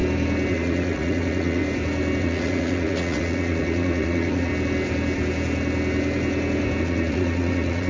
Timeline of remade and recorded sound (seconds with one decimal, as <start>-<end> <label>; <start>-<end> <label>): 0.0-0.5 recorded; 0.5-1.6 remade; 1.6-2.2 recorded; 2.2-4.5 remade; 4.5-6.8 recorded; 6.8-7.9 remade